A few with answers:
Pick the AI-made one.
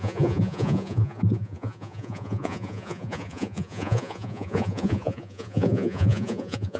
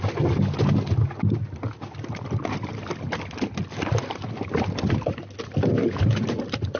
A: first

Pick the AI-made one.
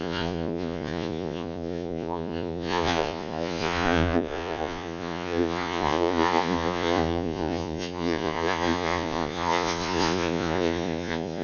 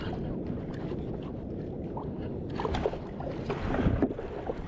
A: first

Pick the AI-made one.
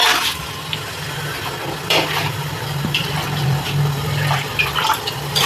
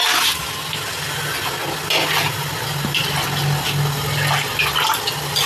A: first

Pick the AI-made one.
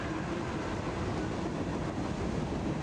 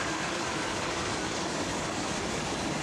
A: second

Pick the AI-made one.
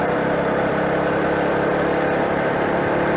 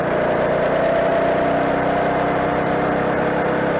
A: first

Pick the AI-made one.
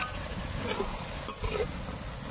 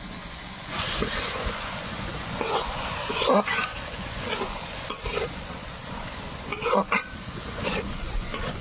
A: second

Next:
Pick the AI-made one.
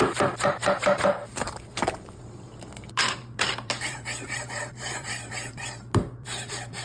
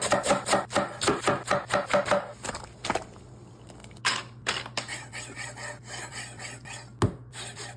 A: first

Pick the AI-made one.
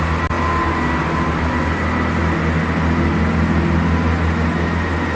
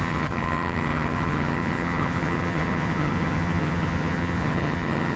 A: second